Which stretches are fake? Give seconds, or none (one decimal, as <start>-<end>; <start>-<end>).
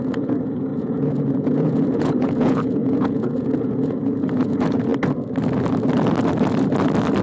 0.0-4.9